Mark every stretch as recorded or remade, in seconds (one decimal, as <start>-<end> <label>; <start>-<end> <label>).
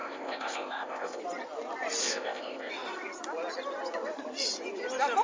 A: 0.0-1.2 remade; 1.2-2.0 recorded; 2.0-2.7 remade; 2.7-5.2 recorded